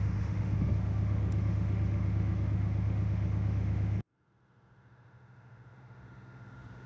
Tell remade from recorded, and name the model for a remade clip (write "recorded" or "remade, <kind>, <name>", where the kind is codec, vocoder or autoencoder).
remade, autoencoder, DAC-VAE